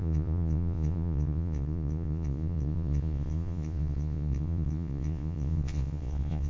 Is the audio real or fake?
fake